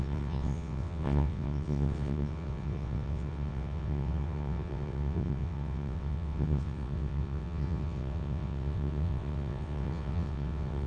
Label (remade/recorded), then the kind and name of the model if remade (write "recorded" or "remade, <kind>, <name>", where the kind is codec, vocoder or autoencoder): remade, vocoder, WaveNeXt